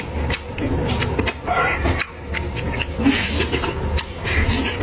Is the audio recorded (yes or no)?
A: yes